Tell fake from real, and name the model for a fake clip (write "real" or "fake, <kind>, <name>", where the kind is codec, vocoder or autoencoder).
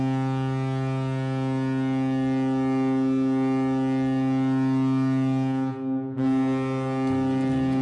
real